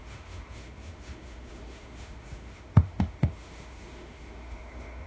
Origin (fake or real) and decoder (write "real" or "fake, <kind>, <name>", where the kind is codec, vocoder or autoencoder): fake, autoencoder, DAC-VAE